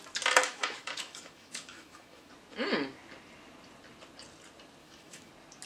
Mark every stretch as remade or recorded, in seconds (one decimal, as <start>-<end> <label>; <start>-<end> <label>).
0.0-0.4 recorded; 0.4-2.3 remade; 2.3-4.8 recorded; 4.8-5.3 remade; 5.3-5.7 recorded